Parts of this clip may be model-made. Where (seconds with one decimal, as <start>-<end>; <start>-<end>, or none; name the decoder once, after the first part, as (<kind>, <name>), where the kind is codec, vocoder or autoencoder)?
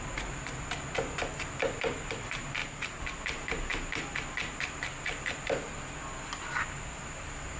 none